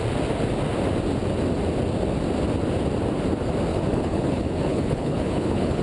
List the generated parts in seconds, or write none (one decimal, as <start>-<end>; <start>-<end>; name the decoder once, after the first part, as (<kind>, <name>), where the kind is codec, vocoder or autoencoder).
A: 3.7-5.8 (codec, HILCodec)

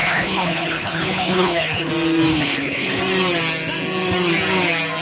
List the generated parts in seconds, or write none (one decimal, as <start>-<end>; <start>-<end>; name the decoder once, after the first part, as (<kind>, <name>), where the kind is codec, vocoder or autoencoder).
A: 0.0-1.9 (codec, HILCodec); 2.3-3.0

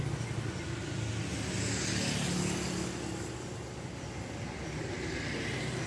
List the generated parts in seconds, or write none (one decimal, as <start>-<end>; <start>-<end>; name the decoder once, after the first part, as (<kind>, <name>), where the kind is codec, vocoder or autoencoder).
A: none

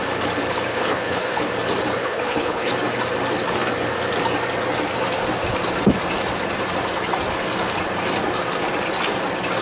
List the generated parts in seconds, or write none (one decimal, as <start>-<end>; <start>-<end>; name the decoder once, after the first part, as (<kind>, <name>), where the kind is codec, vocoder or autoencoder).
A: 0.7-1.5 (codec, HILCodec); 2.0-2.7

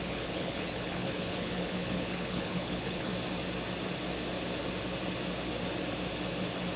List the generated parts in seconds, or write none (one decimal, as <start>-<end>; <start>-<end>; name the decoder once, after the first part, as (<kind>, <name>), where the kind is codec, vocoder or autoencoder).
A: 0.0-3.1 (codec, HILCodec)

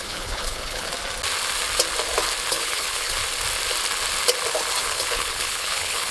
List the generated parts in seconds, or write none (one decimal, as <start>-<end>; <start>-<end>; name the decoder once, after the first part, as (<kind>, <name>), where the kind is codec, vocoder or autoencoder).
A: 0.0-0.9 (codec, HILCodec); 2.5-3.2; 4.8-6.1

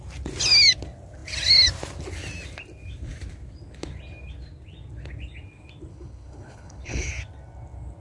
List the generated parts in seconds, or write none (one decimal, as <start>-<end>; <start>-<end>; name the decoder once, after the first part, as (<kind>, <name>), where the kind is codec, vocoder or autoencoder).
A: 5.9-7.1 (codec, HILCodec)